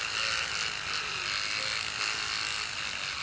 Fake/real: real